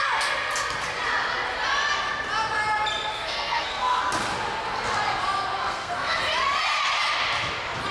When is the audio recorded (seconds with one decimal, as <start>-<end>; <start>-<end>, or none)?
0.0-3.1; 4.0-5.5; 6.2-7.9